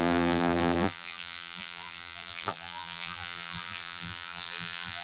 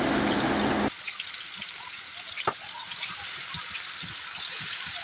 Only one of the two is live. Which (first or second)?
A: second